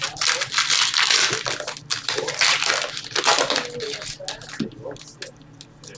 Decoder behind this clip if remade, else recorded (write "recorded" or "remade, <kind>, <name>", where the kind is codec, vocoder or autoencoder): recorded